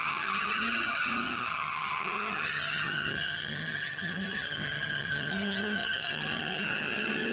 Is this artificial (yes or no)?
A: yes